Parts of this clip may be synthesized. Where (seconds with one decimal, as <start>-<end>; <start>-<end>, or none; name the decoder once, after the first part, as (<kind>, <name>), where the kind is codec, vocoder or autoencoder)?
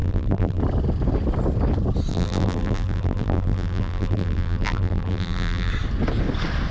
0.0-0.6 (vocoder, BigVGAN v2); 2.1-5.7